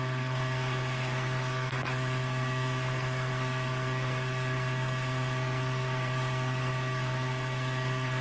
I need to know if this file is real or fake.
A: fake